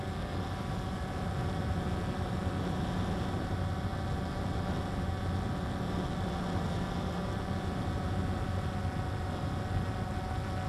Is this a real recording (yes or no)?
yes